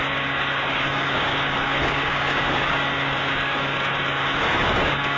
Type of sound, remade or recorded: remade